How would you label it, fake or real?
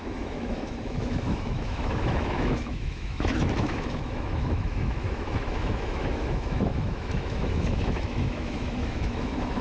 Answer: fake